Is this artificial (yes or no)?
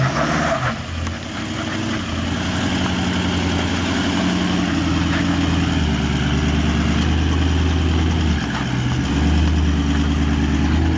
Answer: no